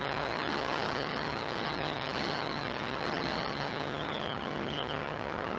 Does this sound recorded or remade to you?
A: remade